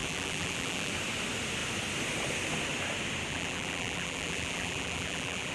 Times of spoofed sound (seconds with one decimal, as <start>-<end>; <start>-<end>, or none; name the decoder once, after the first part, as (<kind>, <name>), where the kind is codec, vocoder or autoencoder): 0.0-0.9 (vocoder, BigVGAN v2); 3.3-5.5